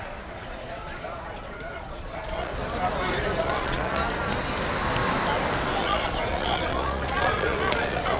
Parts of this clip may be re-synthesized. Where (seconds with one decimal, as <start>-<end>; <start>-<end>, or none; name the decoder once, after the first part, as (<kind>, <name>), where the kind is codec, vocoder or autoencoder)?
0.0-2.5 (vocoder, Vocos); 3.4-4.0; 5.8-8.2